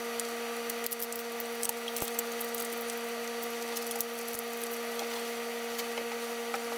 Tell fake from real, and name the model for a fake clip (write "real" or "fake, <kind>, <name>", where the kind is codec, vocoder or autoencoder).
real